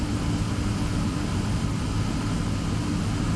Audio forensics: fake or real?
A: real